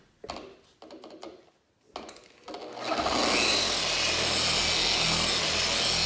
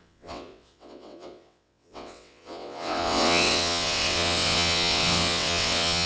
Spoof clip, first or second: second